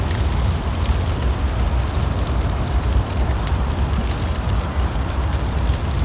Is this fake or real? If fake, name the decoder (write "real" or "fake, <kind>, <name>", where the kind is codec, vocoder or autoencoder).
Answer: real